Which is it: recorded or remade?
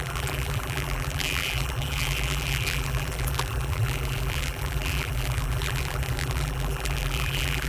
remade